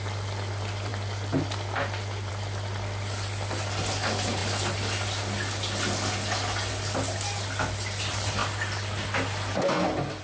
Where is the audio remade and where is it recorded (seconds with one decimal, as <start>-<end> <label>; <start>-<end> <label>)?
0.0-10.2 recorded